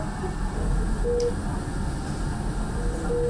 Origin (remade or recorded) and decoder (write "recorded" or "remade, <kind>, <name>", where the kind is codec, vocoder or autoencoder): recorded